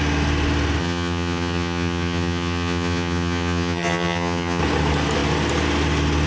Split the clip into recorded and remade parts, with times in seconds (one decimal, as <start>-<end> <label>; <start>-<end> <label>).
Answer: 0.0-0.8 recorded; 0.8-4.6 remade; 4.6-6.3 recorded